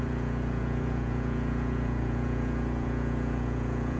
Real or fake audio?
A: fake